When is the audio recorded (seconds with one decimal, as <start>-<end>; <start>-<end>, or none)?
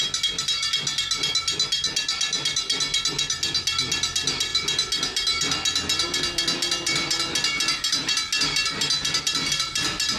0.0-10.2